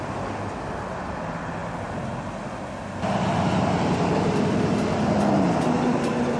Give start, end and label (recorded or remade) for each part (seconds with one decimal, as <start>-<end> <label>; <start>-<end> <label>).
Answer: 0.0-6.4 recorded